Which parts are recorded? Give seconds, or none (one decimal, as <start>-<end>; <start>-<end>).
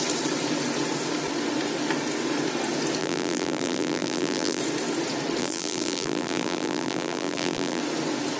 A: 0.0-3.0; 4.6-5.4; 7.8-8.4